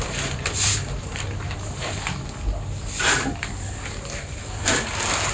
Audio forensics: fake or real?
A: real